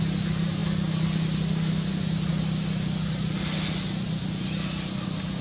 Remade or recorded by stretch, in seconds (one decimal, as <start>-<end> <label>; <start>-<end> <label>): 0.0-5.4 recorded